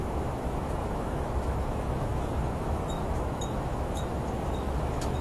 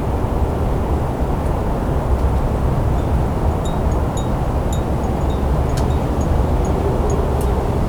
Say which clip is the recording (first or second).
second